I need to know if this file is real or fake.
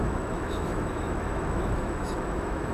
fake